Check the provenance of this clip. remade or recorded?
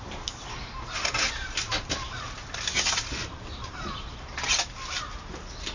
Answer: recorded